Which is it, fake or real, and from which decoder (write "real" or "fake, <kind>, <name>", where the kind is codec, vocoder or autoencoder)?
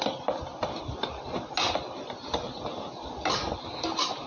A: real